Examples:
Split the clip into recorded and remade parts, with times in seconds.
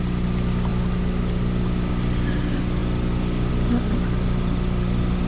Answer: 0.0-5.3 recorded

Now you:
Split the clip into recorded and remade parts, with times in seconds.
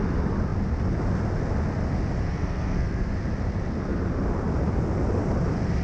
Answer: 0.0-2.2 recorded; 2.2-3.1 remade; 3.1-5.8 recorded